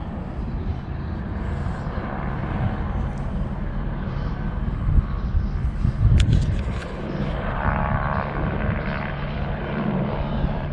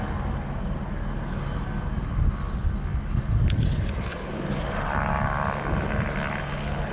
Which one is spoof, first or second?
first